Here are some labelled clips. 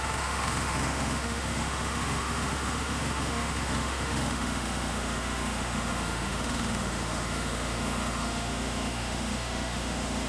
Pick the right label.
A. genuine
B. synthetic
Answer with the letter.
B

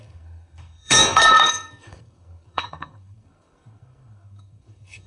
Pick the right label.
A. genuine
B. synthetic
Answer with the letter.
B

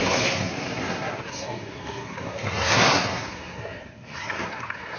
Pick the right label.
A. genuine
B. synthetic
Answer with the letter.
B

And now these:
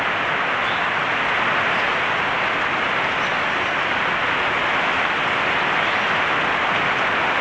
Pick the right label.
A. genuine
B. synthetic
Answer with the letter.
A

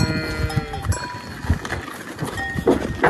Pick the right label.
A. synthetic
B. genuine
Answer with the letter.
B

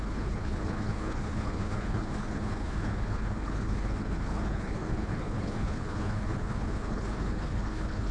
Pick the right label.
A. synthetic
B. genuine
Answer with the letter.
A